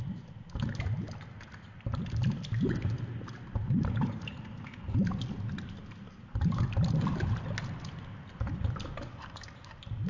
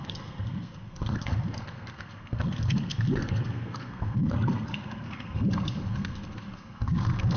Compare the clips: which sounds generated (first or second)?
second